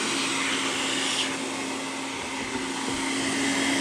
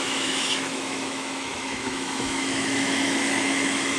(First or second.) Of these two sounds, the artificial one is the second